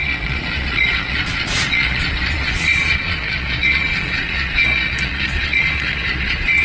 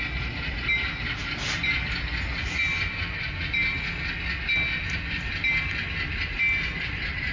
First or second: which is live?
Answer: second